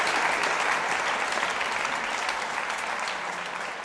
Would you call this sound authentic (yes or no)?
yes